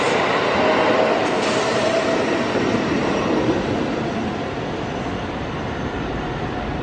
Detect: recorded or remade recorded